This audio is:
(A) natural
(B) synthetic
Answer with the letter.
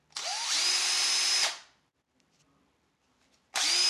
A